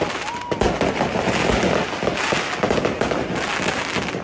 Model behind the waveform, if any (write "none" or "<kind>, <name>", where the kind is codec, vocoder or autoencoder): none